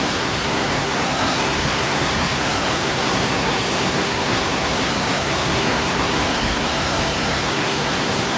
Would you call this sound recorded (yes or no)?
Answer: no